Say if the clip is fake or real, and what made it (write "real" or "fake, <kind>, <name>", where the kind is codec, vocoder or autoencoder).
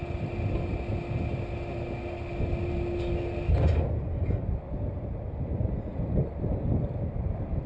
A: real